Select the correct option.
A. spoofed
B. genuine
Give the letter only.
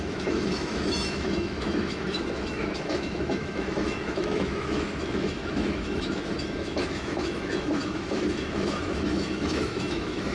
A